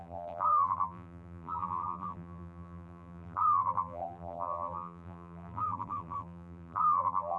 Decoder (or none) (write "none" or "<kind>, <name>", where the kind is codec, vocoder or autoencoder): vocoder, BigVGAN v2